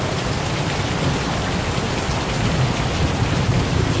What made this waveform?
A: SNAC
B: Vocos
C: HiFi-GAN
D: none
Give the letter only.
D